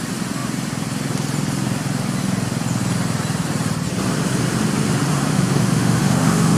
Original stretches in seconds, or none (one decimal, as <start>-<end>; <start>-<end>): 0.0-5.3